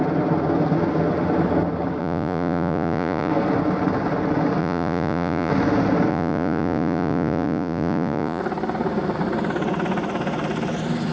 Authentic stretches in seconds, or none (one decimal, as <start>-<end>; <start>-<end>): 0.0-2.0; 3.3-4.6; 5.5-6.1; 8.4-11.1